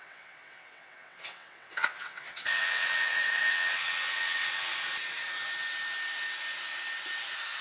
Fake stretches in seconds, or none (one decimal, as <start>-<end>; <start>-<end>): 0.0-4.7